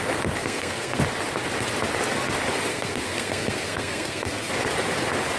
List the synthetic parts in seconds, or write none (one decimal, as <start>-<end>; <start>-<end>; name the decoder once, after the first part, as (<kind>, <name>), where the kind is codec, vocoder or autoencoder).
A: 0.4-1.0 (codec, SNAC); 2.7-4.5